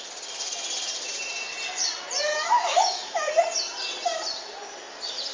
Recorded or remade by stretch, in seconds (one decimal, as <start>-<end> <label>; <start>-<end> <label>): 0.0-2.3 recorded; 2.3-3.3 remade; 3.3-5.3 recorded